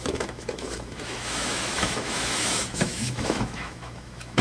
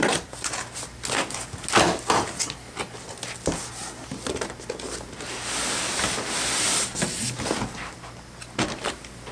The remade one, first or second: first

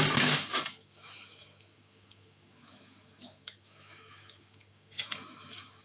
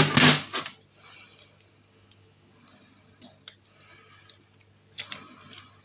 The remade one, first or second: first